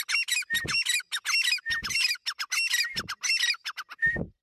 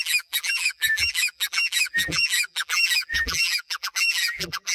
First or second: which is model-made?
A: second